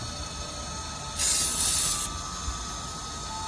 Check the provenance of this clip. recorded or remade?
recorded